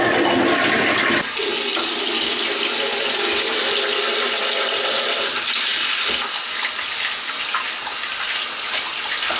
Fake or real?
real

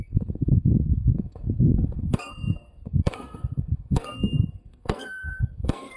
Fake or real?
fake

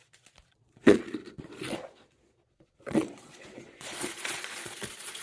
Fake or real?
fake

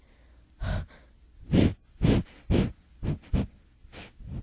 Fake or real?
real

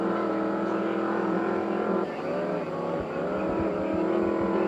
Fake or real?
real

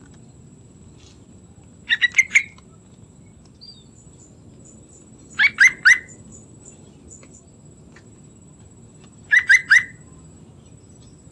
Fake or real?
real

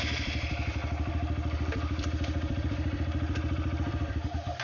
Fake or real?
fake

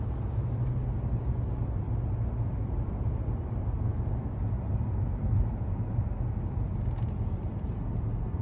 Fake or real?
real